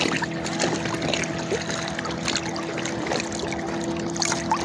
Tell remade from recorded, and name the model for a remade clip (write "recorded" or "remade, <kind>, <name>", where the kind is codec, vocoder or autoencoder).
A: recorded